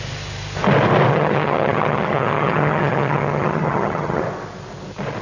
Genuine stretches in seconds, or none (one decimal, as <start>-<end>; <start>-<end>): 0.0-1.1; 4.2-5.2